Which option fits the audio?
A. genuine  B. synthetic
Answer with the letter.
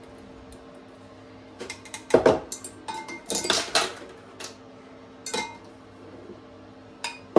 A